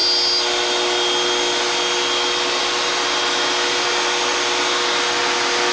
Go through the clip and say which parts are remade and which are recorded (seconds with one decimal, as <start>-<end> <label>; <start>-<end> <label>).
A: 0.0-5.7 recorded